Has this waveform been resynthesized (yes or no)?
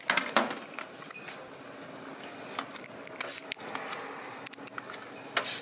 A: no